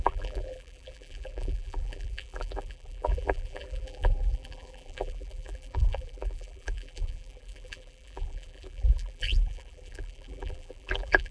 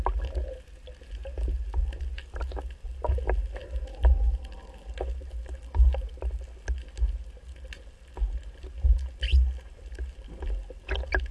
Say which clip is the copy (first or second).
first